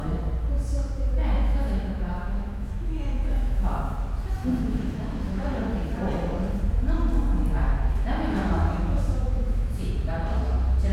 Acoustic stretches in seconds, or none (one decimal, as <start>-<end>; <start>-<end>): 0.0-1.2; 3.8-4.4; 5.4-7.7; 9.9-10.9